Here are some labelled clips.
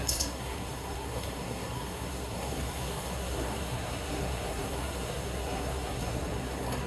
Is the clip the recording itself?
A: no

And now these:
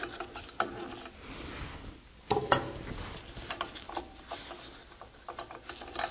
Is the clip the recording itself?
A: yes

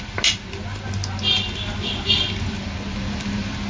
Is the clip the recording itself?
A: yes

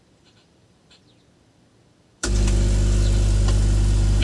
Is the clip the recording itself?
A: no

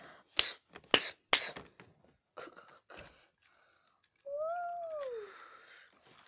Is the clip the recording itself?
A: yes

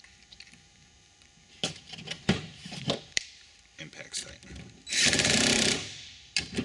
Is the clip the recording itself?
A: no